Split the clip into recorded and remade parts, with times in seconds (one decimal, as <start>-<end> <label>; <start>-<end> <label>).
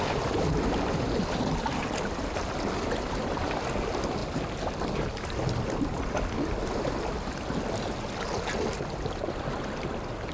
0.0-10.3 recorded